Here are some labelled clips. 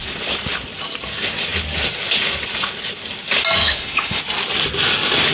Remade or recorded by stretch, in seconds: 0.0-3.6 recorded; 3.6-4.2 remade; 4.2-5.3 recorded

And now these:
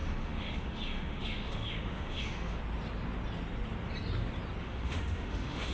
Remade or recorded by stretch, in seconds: 0.0-2.6 remade; 2.6-4.6 recorded; 4.6-5.7 remade

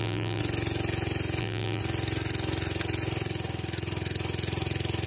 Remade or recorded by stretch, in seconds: 0.0-0.4 remade; 0.4-1.4 recorded; 1.4-1.8 remade; 1.8-5.1 recorded

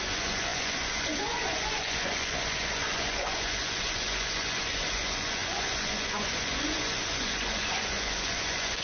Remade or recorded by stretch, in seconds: 0.0-8.8 remade